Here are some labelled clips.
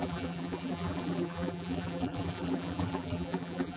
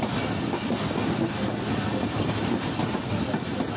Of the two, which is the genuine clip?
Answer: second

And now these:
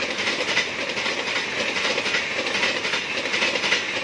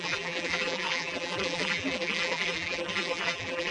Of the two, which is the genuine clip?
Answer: first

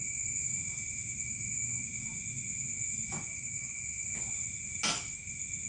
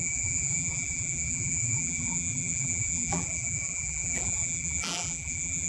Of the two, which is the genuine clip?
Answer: first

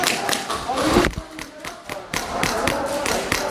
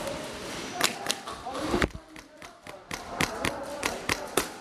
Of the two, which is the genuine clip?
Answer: first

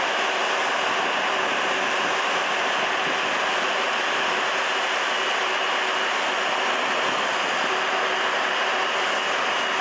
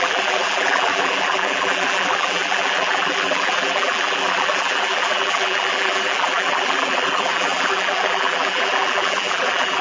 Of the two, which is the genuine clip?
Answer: first